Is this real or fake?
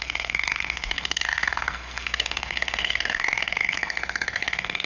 fake